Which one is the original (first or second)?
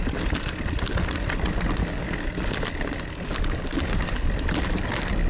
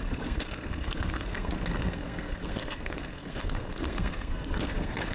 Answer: first